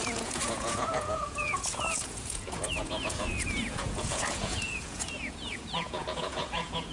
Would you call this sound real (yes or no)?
no